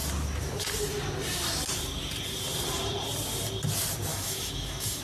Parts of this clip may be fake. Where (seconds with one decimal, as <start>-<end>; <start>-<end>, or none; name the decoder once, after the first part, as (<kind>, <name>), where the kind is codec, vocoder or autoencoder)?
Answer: 4.1-5.0 (autoencoder, DAC-VAE)